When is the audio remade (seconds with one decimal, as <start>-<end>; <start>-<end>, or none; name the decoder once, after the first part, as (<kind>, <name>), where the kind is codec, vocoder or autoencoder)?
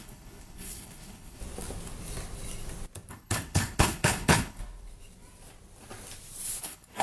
0.0-1.4 (codec, HILCodec); 3.1-4.6; 6.6-7.0